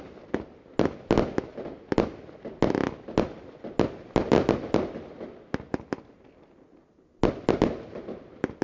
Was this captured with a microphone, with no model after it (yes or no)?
yes